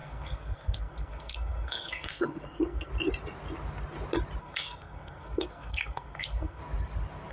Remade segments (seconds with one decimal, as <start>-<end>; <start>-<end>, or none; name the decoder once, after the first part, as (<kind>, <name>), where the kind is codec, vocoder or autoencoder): 0.0-2.9 (codec, SNAC); 4.4-6.6